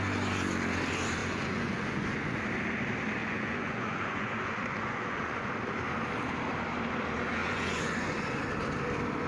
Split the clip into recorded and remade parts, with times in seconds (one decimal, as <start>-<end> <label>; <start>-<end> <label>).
0.0-1.2 recorded; 1.2-2.4 remade; 2.4-3.2 recorded; 3.2-5.5 remade; 5.5-7.4 recorded; 7.4-8.4 remade; 8.4-9.3 recorded